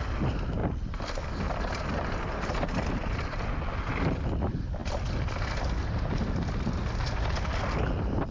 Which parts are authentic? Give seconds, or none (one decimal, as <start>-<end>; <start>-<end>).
0.0-8.3